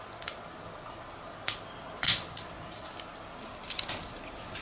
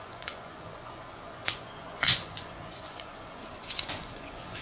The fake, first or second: second